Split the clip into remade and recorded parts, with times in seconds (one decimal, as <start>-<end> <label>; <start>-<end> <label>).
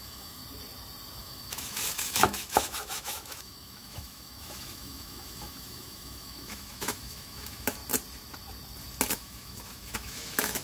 0.0-0.4 remade; 0.4-1.2 recorded; 1.2-7.8 remade; 7.8-9.1 recorded; 9.1-10.6 remade